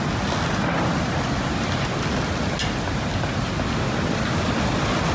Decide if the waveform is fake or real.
real